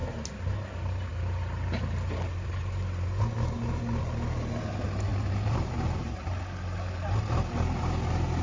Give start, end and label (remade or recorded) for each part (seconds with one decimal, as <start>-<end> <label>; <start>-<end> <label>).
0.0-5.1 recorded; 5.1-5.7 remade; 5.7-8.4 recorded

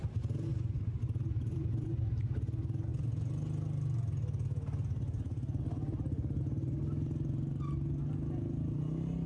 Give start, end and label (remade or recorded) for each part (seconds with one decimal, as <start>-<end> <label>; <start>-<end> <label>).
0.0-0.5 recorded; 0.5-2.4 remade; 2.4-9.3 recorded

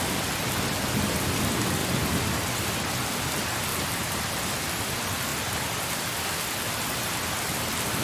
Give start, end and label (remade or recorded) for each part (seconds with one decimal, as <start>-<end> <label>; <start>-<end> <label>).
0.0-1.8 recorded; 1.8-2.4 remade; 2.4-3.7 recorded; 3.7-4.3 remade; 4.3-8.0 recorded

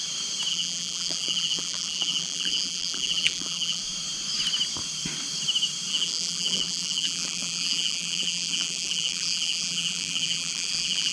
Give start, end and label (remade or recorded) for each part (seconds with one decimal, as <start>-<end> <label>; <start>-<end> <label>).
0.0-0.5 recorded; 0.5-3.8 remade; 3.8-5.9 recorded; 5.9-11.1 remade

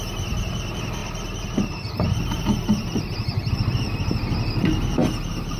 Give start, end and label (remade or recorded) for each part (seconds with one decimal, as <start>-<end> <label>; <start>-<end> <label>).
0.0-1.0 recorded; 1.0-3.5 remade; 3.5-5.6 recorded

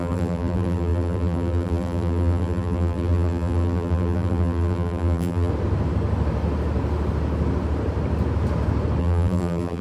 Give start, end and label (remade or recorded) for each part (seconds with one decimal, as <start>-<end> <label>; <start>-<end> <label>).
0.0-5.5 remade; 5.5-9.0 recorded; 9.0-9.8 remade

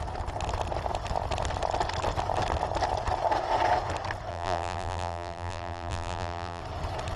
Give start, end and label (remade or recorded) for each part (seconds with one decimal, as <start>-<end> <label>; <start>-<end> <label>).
0.0-4.3 recorded; 4.3-6.6 remade; 6.6-7.2 recorded

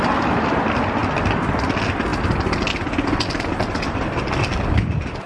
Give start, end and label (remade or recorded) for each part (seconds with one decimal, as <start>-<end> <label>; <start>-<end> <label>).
0.0-2.1 remade; 2.1-4.7 recorded; 4.7-5.3 remade